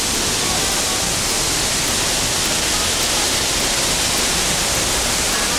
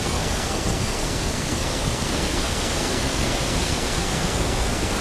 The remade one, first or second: second